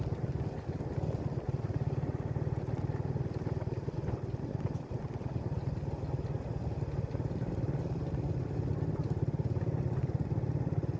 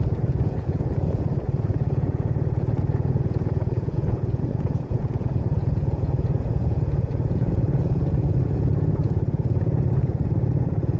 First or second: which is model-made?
second